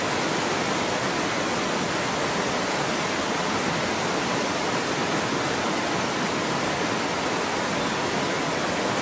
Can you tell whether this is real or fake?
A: real